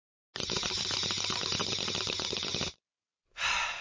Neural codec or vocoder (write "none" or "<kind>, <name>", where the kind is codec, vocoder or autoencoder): none